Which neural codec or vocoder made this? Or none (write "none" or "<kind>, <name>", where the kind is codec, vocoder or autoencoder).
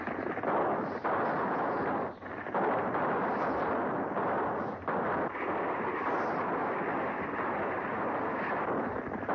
none